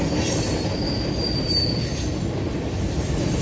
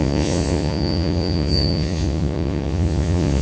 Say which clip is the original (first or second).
first